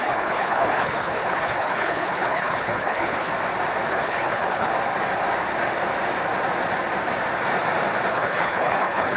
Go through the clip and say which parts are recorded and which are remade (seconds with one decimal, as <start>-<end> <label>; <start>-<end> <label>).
0.0-3.3 remade; 3.3-3.9 recorded; 3.9-4.7 remade; 4.7-8.1 recorded; 8.1-9.2 remade